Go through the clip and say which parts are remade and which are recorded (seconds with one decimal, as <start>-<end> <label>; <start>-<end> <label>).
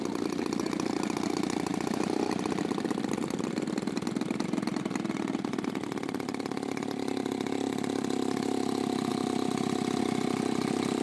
0.0-1.7 recorded; 1.7-3.2 remade; 3.2-11.0 recorded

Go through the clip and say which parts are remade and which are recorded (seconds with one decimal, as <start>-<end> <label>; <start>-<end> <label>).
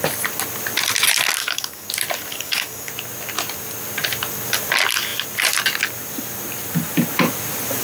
0.0-1.4 recorded; 1.4-1.9 remade; 1.9-2.3 recorded; 2.3-2.9 remade; 2.9-7.8 recorded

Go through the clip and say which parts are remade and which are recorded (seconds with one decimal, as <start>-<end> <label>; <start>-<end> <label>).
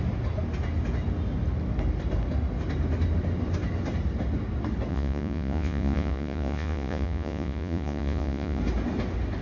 0.0-4.9 recorded; 4.9-8.6 remade; 8.6-9.4 recorded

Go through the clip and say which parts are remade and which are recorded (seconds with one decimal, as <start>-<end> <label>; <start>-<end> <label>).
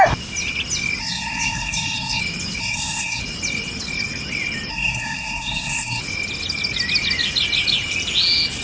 0.0-1.0 recorded; 1.0-2.2 remade; 2.2-2.6 recorded; 2.6-3.2 remade; 3.2-4.7 recorded; 4.7-6.0 remade; 6.0-8.6 recorded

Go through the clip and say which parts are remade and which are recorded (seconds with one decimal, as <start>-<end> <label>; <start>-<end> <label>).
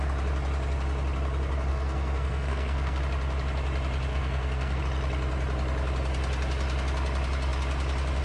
0.0-1.7 recorded; 1.7-3.0 remade; 3.0-4.1 recorded; 4.1-4.8 remade; 4.8-8.2 recorded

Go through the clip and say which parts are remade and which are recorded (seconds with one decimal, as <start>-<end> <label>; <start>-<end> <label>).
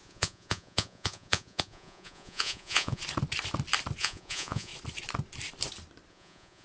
0.0-3.0 remade; 3.0-4.0 recorded; 4.0-4.7 remade; 4.7-6.1 recorded; 6.1-6.6 remade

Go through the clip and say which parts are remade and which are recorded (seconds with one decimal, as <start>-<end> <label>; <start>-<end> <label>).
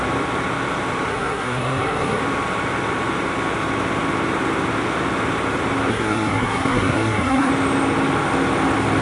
0.0-1.1 recorded; 1.1-2.2 remade; 2.2-5.9 recorded; 5.9-7.5 remade; 7.5-9.0 recorded